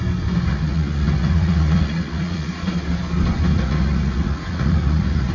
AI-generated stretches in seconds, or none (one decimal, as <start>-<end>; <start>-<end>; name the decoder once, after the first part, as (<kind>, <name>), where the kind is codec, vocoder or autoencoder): 0.5-2.7 (vocoder, Vocos); 3.5-5.3